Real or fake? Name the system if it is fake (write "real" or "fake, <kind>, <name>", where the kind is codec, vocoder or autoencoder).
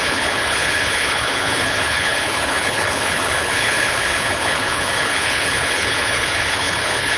fake, codec, HILCodec